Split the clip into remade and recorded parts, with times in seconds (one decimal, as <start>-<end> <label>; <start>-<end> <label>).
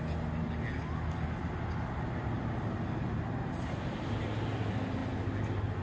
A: 0.0-5.8 recorded